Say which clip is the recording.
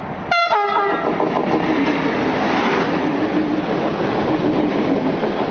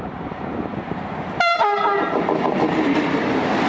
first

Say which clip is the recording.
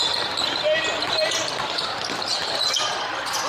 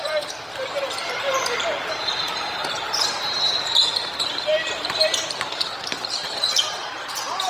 first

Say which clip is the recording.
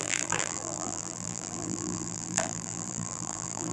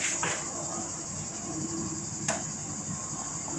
second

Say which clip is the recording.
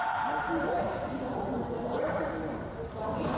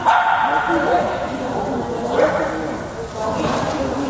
second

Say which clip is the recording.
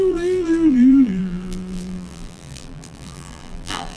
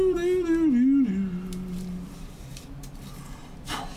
second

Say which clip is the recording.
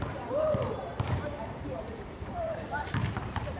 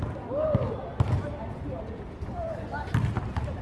second